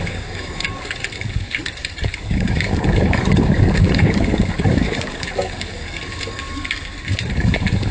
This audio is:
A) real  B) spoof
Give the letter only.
B